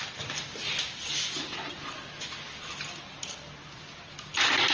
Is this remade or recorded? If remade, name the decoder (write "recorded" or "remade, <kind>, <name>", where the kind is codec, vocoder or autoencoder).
recorded